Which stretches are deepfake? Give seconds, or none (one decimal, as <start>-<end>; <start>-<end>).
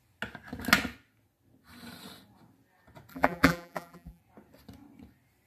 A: 3.1-4.2